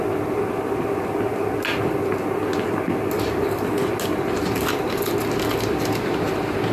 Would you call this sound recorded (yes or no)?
yes